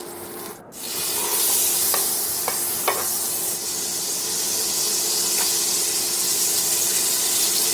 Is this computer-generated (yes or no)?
no